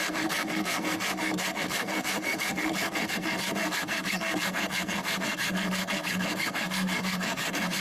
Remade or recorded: remade